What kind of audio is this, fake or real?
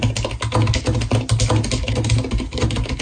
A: real